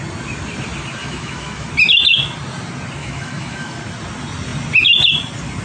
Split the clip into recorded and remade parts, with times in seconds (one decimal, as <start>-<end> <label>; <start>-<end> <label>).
0.0-1.0 recorded; 1.0-1.7 remade; 1.7-3.0 recorded; 3.0-3.8 remade; 3.8-5.6 recorded